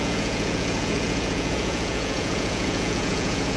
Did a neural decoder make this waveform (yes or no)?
yes